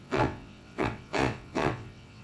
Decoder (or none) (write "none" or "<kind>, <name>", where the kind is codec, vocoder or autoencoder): vocoder, WaveNeXt